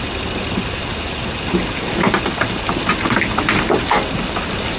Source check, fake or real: real